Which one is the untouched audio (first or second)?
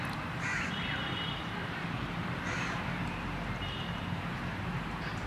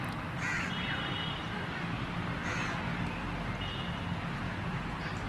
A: second